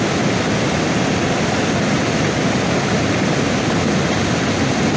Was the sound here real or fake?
real